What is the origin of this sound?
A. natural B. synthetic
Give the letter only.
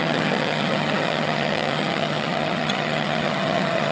B